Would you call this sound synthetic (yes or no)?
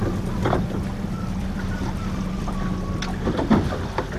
no